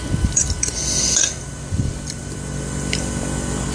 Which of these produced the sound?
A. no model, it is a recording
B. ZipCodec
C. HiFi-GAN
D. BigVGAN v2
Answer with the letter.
D